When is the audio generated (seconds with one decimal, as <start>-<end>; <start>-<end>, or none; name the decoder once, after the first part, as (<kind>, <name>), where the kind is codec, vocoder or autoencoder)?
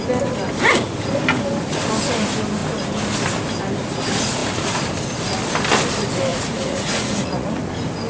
6.3-7.6 (vocoder, Vocos)